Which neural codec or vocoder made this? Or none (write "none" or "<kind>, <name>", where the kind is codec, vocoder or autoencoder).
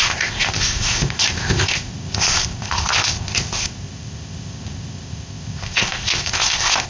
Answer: codec, ZipCodec